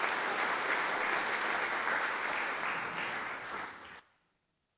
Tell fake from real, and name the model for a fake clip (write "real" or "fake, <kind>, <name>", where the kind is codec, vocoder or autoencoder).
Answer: real